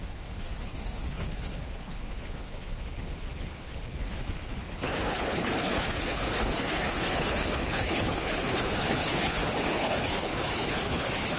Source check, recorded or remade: remade